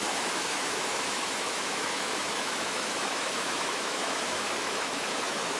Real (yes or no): no